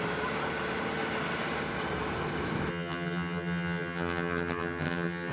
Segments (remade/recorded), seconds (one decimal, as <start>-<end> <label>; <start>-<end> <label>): 0.0-2.7 recorded; 2.7-5.3 remade